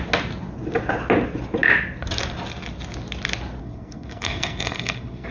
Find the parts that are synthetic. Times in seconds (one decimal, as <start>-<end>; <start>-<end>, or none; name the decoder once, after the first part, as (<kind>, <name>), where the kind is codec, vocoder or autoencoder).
3.6-5.3 (codec, SNAC)